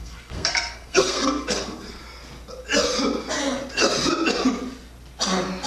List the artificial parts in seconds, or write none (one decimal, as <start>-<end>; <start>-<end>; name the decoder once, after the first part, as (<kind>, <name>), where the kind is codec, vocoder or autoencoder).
0.0-2.0 (codec, SNAC)